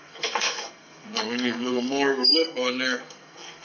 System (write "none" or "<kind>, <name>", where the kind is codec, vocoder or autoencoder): codec, SNAC